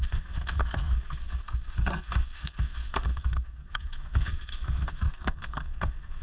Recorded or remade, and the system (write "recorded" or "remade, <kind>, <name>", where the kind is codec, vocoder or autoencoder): remade, codec, SNAC